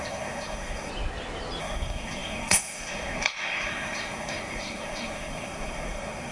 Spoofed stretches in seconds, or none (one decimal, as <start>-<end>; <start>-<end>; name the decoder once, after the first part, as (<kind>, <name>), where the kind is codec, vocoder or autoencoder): 0.0-0.9 (codec, SNAC); 1.6-6.3